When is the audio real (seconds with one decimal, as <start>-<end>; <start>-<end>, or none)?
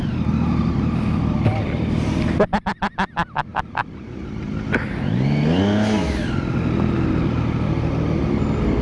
0.0-8.8